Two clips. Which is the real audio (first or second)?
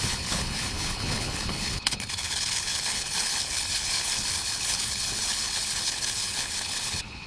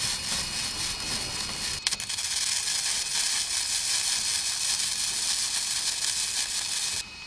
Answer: second